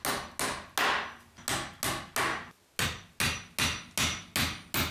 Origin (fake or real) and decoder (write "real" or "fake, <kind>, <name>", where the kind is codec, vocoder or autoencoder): real